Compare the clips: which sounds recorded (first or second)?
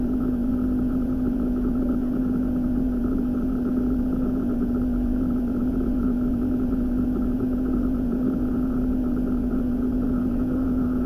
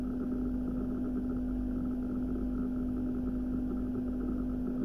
second